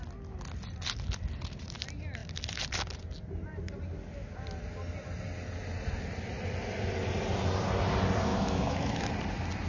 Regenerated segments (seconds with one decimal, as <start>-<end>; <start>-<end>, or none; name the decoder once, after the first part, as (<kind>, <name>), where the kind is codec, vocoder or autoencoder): 8.3-9.1 (autoencoder, DAC-VAE)